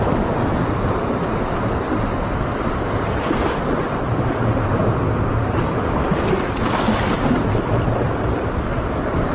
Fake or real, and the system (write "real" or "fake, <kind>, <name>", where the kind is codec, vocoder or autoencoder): real